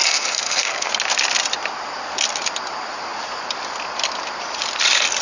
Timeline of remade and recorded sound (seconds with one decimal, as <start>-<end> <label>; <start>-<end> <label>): 0.0-0.9 remade; 0.9-5.2 recorded